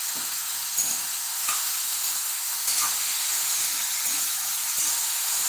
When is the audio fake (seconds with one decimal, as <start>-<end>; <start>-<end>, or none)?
0.0-3.7; 4.9-5.5